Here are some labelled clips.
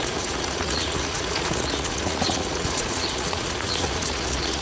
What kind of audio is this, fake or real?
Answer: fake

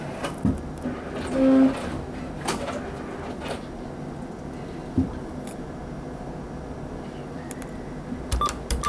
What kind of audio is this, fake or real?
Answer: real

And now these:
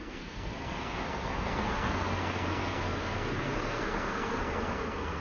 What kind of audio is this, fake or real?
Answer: fake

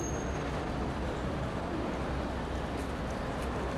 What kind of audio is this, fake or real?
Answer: real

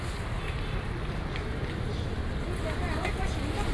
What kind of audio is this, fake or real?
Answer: real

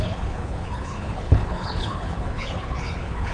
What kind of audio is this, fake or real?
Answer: fake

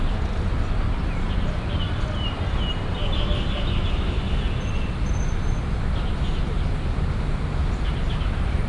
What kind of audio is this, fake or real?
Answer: real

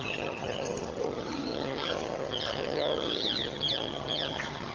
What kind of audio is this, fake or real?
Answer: fake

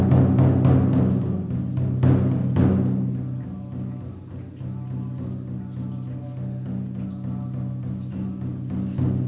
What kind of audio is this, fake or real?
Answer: real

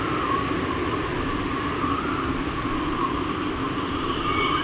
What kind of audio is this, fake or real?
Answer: real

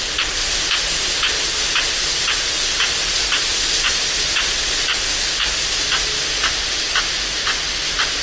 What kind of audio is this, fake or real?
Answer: real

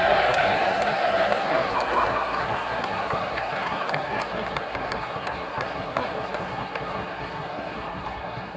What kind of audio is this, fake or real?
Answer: fake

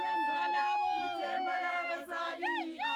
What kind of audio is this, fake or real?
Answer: fake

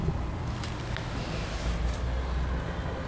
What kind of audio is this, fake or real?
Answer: real